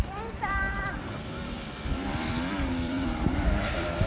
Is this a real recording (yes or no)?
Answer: no